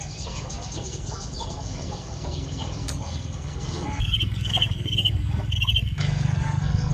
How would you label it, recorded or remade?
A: remade